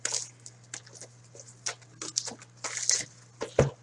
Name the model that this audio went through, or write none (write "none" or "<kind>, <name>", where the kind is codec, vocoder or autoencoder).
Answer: none